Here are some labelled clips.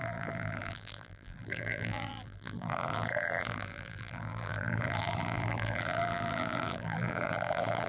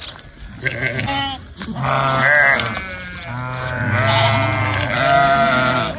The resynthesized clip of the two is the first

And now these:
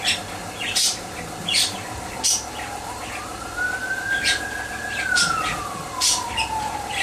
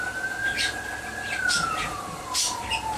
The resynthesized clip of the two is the first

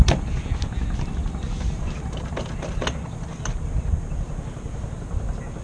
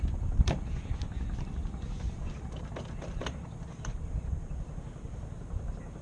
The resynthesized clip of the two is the second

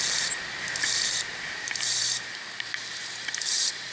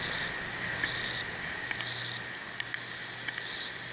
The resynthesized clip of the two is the first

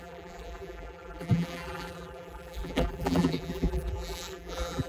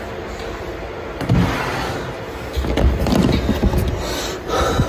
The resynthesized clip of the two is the first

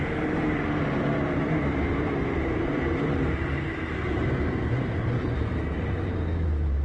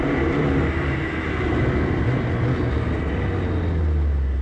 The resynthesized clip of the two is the first